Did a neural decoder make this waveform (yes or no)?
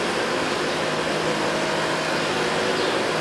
no